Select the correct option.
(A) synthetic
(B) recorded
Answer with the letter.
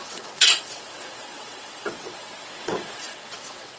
A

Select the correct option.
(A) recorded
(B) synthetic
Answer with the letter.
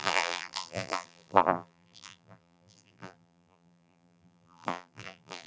B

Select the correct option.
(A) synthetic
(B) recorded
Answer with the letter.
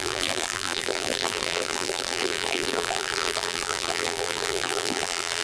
A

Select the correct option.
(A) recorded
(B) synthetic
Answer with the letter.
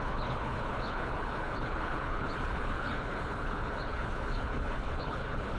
B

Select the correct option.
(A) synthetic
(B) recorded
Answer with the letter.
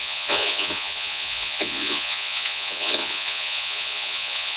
A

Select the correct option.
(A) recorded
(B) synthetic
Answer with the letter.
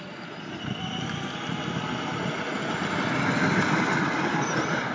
A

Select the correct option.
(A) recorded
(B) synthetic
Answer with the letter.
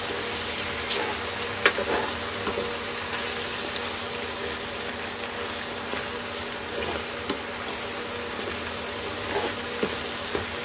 A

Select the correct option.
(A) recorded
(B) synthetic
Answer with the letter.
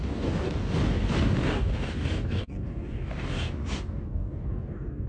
B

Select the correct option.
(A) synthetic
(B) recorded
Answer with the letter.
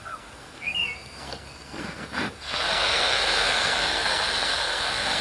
A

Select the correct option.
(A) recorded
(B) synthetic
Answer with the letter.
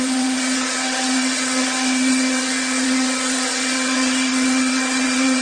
B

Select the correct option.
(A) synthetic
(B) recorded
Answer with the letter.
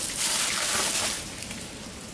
A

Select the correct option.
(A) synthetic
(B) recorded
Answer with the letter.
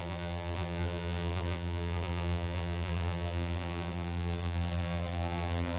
A